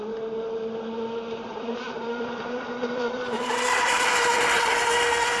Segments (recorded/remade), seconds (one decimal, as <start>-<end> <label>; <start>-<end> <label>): 0.0-1.5 recorded; 1.5-4.7 remade; 4.7-5.4 recorded